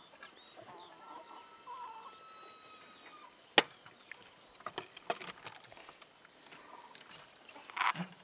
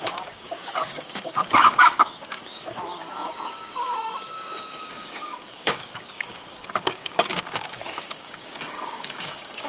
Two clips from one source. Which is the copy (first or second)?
second